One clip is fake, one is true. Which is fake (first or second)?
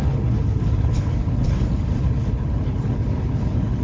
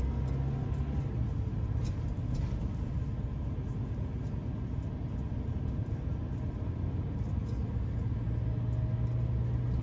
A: first